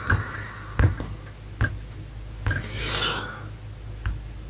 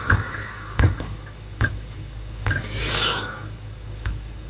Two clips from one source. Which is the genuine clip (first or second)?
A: first